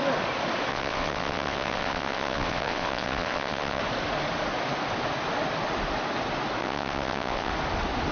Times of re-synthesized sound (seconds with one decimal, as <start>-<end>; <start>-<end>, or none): 0.7-3.8; 6.6-7.5